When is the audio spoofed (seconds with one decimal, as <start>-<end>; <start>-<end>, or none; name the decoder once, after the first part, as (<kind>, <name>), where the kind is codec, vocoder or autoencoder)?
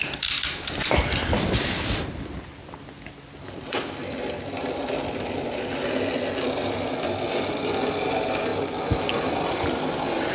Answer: none